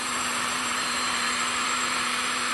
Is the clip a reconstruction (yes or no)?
yes